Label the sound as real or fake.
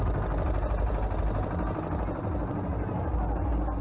real